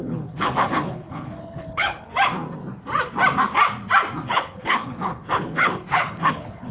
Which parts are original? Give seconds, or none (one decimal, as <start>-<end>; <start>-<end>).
2.1-4.3